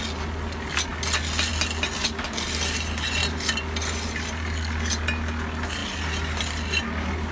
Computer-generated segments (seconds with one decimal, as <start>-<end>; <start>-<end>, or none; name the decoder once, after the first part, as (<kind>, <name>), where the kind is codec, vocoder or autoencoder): none